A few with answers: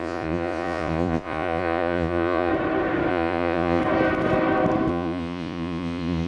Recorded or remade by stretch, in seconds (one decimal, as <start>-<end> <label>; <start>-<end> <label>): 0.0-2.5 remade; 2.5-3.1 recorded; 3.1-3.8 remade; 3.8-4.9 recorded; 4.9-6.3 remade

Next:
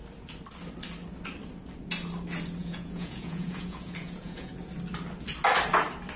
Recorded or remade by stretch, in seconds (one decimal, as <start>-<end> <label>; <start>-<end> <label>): 0.0-2.6 recorded; 2.6-4.5 remade; 4.5-6.2 recorded

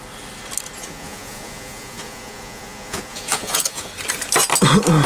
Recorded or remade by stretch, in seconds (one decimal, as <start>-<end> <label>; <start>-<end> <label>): 0.0-0.8 recorded; 0.8-3.9 remade; 3.9-5.1 recorded